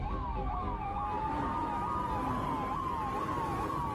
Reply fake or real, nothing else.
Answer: real